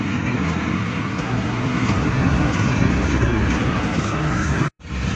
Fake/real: fake